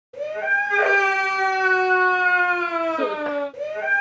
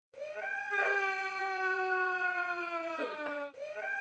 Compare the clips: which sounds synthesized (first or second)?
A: second